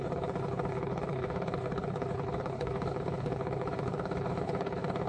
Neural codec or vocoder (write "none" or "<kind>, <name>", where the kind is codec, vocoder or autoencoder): codec, HILCodec